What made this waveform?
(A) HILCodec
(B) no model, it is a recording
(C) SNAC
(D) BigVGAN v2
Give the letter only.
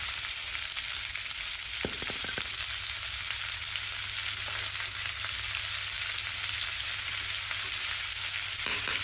B